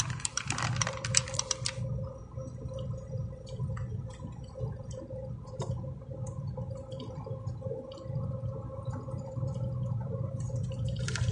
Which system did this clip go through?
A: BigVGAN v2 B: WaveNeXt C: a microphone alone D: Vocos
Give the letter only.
A